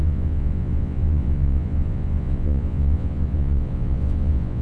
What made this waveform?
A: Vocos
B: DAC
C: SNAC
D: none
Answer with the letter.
A